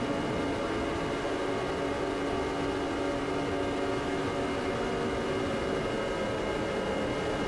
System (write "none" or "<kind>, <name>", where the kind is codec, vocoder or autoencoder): none